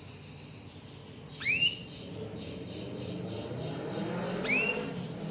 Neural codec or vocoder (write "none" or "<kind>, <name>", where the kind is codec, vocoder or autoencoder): none